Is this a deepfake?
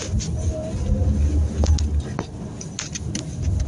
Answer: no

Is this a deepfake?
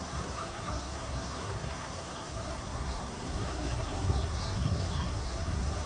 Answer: yes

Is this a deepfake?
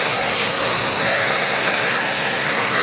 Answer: yes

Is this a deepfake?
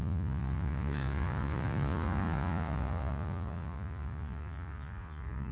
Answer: yes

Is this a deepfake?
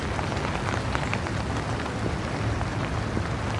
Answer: no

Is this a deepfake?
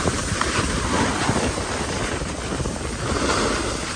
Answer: no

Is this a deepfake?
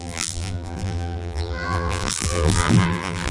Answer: yes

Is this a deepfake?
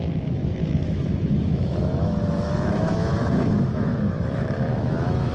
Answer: yes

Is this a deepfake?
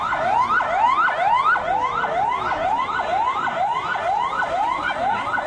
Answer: no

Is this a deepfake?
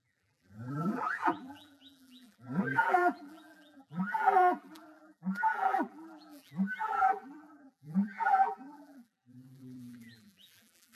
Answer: yes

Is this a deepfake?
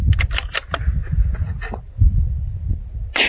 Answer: no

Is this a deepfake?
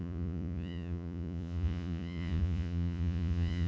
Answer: yes